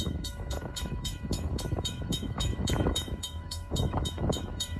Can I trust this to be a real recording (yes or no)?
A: no